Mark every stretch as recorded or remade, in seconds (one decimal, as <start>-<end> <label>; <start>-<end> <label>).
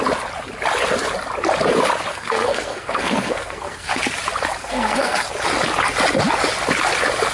0.0-2.1 recorded; 2.1-4.0 remade; 4.0-4.6 recorded; 4.6-5.3 remade; 5.3-7.3 recorded